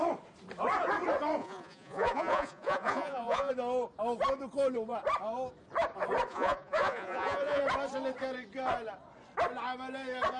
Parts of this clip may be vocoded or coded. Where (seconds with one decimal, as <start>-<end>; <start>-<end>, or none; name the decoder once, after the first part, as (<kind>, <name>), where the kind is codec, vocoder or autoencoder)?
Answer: 1.4-3.5 (vocoder, Vocos); 6.3-7.6